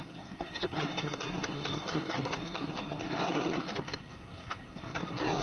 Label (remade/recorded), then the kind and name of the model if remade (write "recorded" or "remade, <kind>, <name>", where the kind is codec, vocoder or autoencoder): remade, codec, SNAC